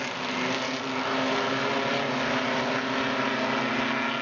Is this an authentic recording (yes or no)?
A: yes